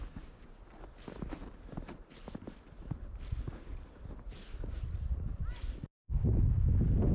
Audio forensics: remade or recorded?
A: recorded